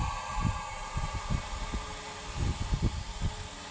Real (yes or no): yes